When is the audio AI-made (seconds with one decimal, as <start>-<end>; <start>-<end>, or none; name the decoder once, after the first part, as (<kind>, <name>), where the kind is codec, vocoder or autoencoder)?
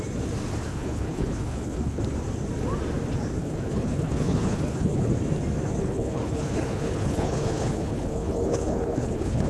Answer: 0.7-2.0 (codec, HILCodec); 3.4-5.1; 5.8-9.5